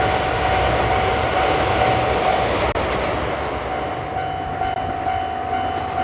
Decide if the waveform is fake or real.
real